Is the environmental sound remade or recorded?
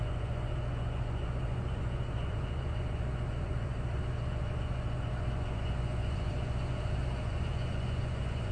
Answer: remade